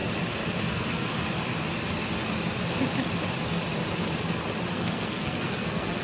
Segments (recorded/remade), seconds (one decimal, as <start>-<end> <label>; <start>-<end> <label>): 0.0-0.7 recorded; 0.7-1.1 remade; 1.1-4.7 recorded; 4.7-6.0 remade